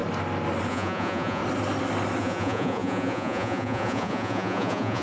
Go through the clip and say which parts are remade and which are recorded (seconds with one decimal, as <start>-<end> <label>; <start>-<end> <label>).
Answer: 0.0-0.7 recorded; 0.7-1.4 remade; 1.4-2.2 recorded; 2.2-5.0 remade